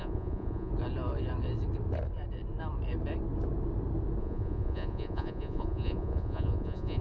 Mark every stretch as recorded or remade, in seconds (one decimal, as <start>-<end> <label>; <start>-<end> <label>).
0.0-0.7 remade; 0.7-4.2 recorded; 4.2-7.0 remade